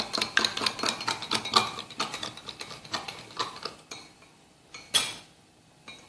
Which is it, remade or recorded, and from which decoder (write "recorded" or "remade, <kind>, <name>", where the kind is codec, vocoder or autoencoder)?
recorded